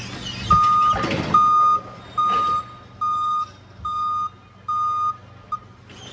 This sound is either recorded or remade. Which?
recorded